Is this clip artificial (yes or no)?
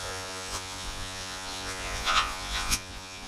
yes